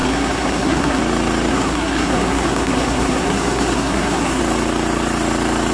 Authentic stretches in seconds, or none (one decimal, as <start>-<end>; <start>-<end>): 1.0-1.5; 4.4-5.7